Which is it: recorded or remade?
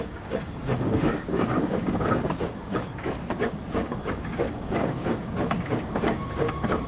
remade